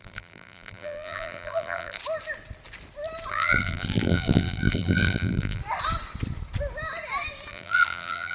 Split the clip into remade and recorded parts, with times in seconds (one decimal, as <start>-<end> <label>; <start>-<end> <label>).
0.0-2.0 remade; 2.0-3.3 recorded; 3.3-5.6 remade; 5.6-7.5 recorded; 7.5-8.3 remade